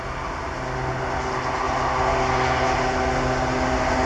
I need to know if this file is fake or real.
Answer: real